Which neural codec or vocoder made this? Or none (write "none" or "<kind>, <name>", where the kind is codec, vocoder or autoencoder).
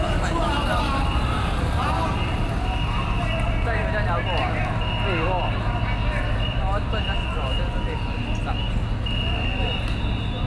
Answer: none